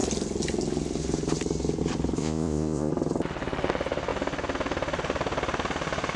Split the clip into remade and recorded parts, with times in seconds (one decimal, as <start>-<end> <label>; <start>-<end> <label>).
0.0-2.2 recorded; 2.2-2.9 remade; 2.9-6.2 recorded